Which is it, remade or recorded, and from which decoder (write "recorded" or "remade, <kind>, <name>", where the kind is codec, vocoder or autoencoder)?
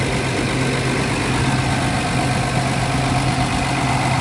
recorded